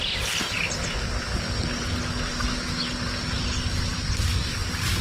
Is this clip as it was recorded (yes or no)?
yes